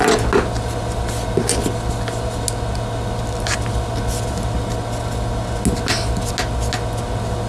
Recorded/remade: recorded